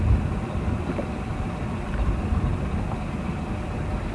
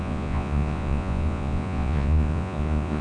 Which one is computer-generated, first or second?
second